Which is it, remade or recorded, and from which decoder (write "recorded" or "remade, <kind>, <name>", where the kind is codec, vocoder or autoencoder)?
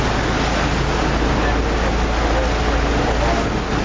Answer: recorded